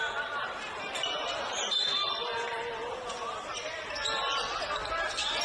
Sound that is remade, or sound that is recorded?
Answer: recorded